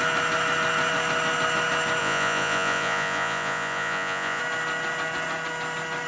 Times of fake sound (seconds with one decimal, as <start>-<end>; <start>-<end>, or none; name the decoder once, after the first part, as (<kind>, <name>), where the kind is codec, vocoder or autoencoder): 2.0-4.4 (vocoder, Vocos)